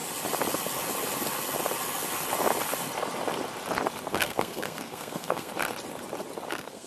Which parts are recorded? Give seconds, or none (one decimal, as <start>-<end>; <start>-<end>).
0.0-4.1; 5.5-6.5